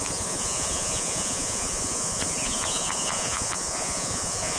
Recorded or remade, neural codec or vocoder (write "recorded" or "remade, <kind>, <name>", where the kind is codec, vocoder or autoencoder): remade, vocoder, Vocos